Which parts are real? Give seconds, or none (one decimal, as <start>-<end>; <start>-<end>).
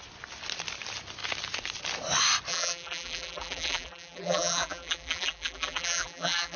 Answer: 0.0-2.5